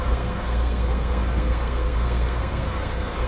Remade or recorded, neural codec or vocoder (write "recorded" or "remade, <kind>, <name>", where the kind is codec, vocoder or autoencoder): remade, codec, SNAC